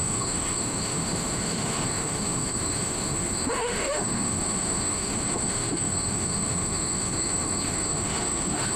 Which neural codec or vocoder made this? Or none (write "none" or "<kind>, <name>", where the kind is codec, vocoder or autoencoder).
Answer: autoencoder, DAC-VAE